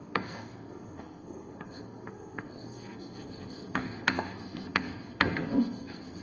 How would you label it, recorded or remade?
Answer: remade